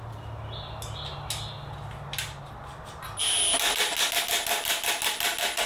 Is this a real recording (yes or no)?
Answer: yes